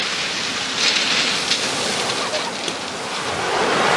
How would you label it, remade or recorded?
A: recorded